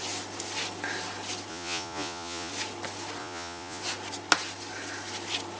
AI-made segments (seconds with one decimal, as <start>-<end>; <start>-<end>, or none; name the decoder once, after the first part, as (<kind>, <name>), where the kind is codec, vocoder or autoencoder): 1.5-2.5 (vocoder, Vocos); 3.2-3.8